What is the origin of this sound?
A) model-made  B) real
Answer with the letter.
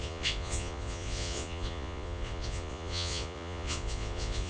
A